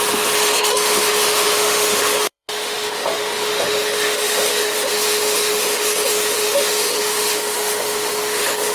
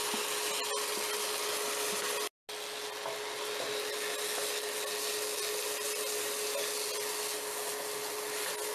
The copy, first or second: first